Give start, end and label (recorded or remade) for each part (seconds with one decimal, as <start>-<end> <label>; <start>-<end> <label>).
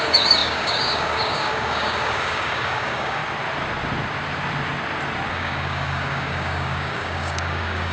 0.0-3.2 remade; 3.2-5.3 recorded; 5.3-7.9 remade